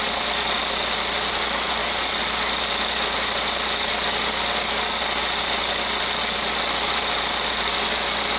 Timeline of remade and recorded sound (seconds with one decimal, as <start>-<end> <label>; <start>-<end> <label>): 0.0-8.4 recorded